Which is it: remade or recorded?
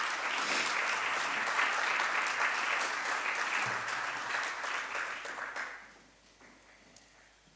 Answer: recorded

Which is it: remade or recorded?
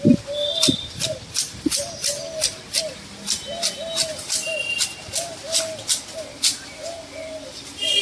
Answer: recorded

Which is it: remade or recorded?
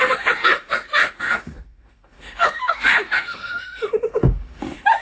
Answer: remade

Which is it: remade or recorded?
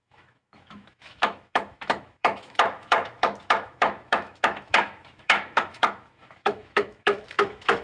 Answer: remade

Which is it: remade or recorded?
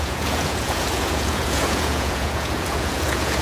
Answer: remade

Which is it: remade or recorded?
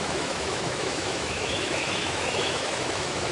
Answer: remade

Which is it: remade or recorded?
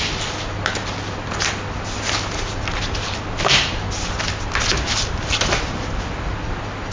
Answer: recorded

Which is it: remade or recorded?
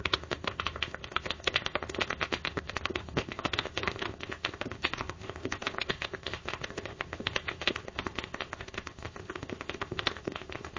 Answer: remade